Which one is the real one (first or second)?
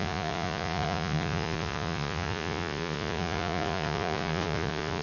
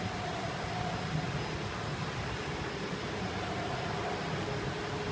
second